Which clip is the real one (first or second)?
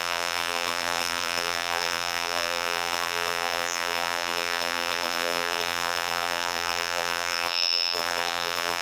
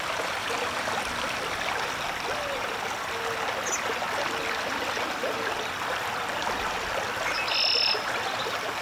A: second